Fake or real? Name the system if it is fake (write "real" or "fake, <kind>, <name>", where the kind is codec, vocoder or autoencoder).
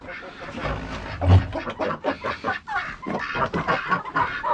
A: real